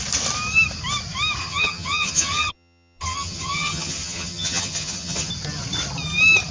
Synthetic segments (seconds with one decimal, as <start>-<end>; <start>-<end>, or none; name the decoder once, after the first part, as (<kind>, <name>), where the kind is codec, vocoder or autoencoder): 1.4-5.3 (vocoder, HiFi-GAN)